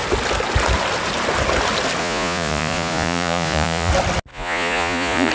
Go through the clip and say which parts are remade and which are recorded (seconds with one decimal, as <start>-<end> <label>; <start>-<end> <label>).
0.0-2.0 recorded; 2.0-3.9 remade; 3.9-4.3 recorded; 4.3-5.3 remade